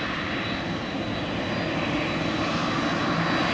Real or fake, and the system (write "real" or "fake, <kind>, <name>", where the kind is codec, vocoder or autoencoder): real